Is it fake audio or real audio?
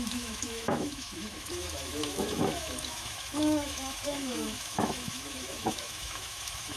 fake